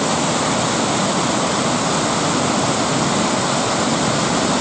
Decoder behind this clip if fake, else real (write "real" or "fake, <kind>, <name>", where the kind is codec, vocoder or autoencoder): real